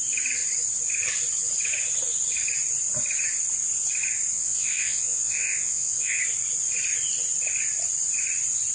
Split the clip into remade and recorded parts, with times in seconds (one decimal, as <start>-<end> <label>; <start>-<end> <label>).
0.0-4.3 recorded; 4.3-6.2 remade; 6.2-8.7 recorded